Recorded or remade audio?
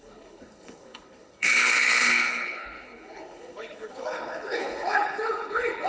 remade